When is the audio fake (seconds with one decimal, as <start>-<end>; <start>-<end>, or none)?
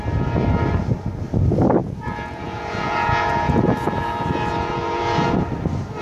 1.8-5.4